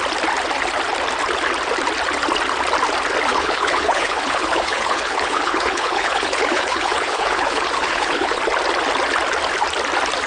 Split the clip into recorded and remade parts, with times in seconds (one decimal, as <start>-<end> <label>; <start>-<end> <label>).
0.0-3.3 recorded; 3.3-8.4 remade; 8.4-10.3 recorded